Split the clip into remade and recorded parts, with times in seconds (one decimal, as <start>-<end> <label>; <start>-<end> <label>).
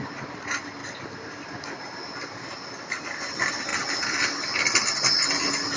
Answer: 0.0-5.8 recorded